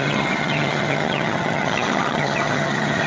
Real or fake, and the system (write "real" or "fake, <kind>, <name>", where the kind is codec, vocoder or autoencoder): fake, vocoder, HiFi-GAN